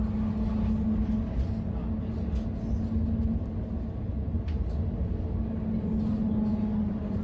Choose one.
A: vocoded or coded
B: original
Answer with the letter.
B